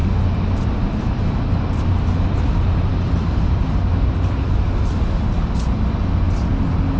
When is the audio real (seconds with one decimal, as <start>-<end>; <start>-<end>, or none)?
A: 0.0-7.0